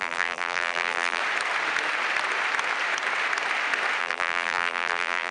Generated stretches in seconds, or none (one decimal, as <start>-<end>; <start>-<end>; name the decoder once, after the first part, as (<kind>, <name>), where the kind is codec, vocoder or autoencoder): 0.0-1.2 (vocoder, BigVGAN v2); 4.0-5.3